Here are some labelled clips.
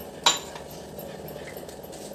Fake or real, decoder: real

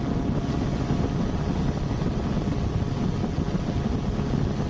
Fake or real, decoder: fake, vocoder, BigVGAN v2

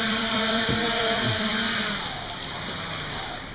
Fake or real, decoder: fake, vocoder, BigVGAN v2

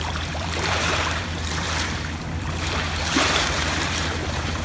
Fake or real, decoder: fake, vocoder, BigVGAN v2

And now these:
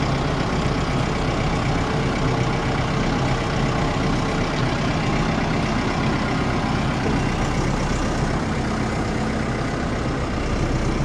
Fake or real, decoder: real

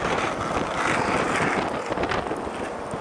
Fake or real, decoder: real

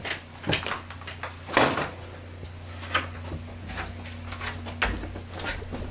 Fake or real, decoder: real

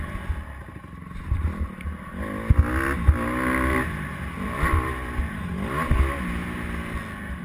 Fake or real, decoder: real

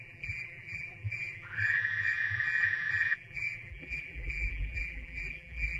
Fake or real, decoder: fake, vocoder, BigVGAN v2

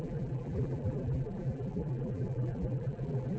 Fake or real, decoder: fake, vocoder, BigVGAN v2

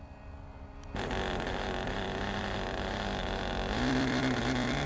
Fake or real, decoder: fake, vocoder, BigVGAN v2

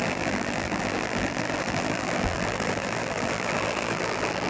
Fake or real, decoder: fake, vocoder, BigVGAN v2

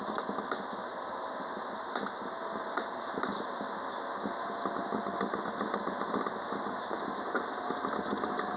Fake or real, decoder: real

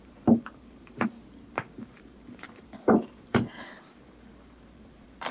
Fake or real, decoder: fake, vocoder, BigVGAN v2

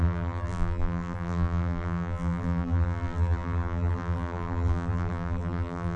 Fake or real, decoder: fake, vocoder, BigVGAN v2